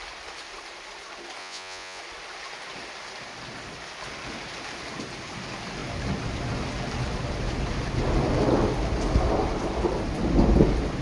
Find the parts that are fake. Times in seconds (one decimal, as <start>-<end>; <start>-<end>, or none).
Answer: 1.4-2.0